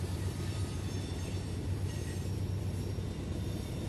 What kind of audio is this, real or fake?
real